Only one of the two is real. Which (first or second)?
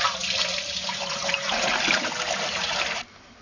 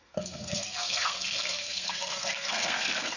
first